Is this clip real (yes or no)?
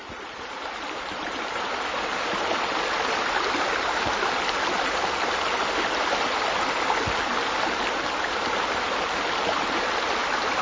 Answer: yes